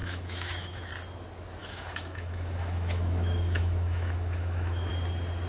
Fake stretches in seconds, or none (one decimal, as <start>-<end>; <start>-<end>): 0.0-0.9; 1.6-4.9